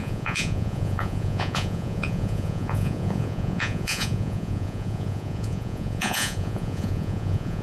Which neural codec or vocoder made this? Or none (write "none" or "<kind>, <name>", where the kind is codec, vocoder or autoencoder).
vocoder, Vocos